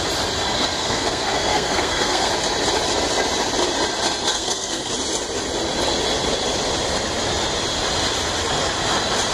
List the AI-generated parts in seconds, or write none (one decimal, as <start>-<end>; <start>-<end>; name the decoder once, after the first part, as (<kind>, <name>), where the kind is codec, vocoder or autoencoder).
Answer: 0.5-2.3 (codec, SNAC); 4.3-4.9